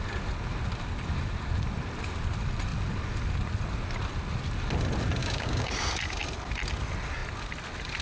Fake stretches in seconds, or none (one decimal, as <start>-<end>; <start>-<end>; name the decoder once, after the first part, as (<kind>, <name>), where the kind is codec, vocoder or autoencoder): 5.2-5.7 (codec, DAC)